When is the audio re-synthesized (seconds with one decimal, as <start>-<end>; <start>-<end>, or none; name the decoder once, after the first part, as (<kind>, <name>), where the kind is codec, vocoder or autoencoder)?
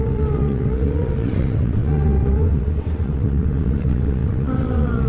0.0-5.1 (vocoder, WaveNeXt)